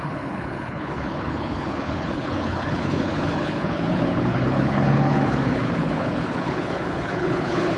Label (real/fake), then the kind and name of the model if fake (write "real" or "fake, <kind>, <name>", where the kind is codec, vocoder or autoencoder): fake, codec, HILCodec